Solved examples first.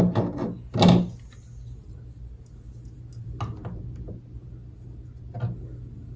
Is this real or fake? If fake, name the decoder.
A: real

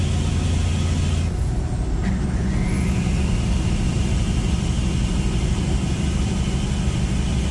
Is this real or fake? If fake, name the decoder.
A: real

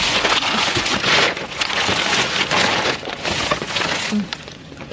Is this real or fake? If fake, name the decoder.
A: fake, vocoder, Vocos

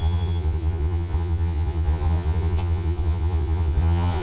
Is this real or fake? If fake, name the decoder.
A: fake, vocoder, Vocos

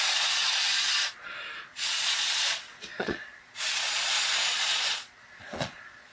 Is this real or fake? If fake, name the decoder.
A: fake, vocoder, Vocos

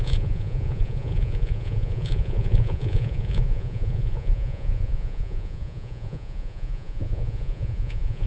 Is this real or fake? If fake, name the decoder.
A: fake, vocoder, Vocos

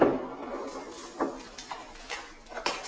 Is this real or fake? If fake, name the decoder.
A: real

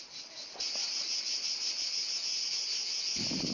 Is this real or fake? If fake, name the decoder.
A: real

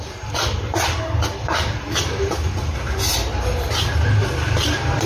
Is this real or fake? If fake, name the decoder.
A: real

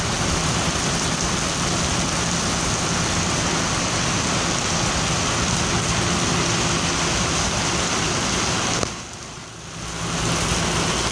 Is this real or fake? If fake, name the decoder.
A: real